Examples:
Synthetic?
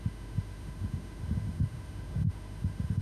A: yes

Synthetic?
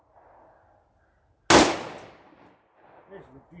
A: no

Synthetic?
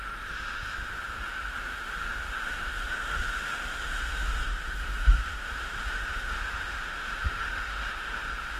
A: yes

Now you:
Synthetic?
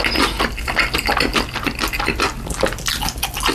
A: no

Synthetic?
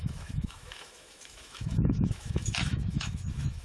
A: yes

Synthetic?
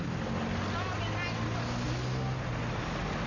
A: no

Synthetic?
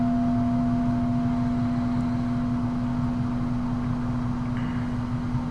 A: no